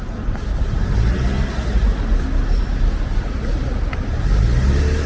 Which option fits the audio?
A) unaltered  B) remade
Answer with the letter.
A